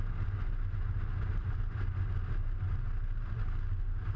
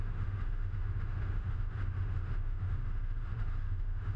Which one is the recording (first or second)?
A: first